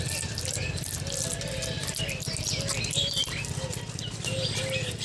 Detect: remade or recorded recorded